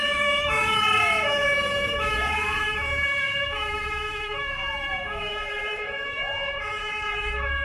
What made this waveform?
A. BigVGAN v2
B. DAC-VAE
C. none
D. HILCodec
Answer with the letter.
B